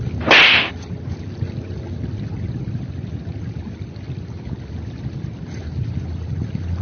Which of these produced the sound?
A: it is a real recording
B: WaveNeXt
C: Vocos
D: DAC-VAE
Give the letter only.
A